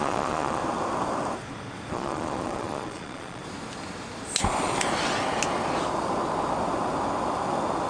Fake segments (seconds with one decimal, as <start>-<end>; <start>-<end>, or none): 0.0-0.6; 1.9-3.4